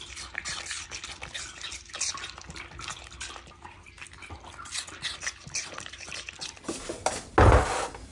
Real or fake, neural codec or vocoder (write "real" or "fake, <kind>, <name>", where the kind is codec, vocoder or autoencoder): real